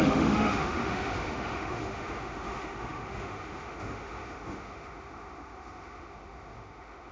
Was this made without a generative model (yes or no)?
no